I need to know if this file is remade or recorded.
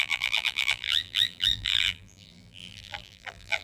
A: remade